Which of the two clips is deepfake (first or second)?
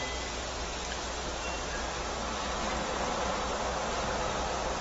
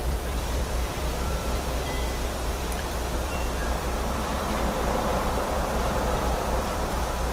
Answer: second